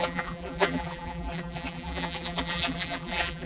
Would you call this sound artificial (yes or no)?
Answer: yes